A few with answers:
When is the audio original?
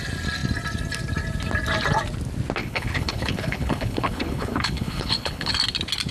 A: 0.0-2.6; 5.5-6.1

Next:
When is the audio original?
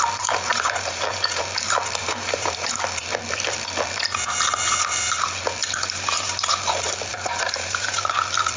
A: 0.0-0.5; 1.4-2.0; 2.7-5.6; 6.5-7.1; 8.2-8.6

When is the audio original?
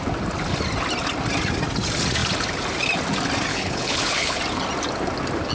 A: 0.0-3.5; 4.4-5.5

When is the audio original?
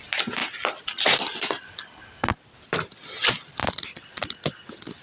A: 0.0-5.0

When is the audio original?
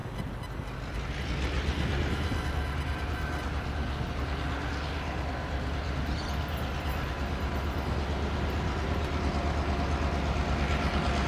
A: 0.0-11.3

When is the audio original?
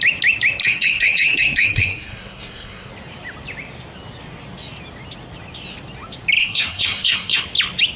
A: 0.0-0.6; 2.9-6.4; 7.4-8.0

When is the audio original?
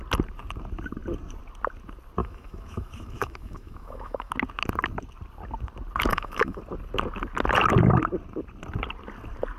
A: 0.0-2.2; 4.3-6.1; 6.6-9.6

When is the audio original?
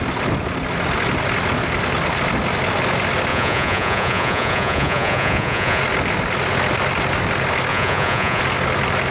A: 0.0-3.3; 5.8-7.7; 8.4-9.1